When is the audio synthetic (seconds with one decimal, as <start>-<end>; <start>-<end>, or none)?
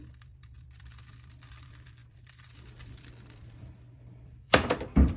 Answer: 0.0-5.2